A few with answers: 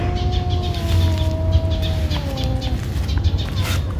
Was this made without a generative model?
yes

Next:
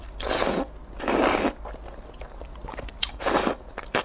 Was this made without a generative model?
yes